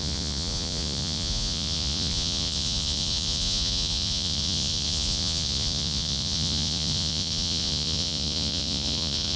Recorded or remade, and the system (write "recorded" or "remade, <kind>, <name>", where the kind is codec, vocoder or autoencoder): remade, vocoder, Vocos